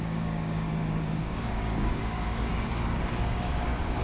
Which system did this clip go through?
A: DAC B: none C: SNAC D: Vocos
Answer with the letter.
A